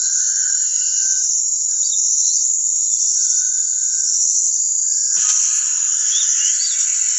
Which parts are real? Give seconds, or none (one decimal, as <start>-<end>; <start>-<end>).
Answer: 0.0-3.1; 3.6-7.2